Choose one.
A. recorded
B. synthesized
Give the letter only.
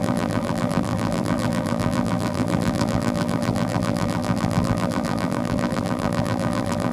B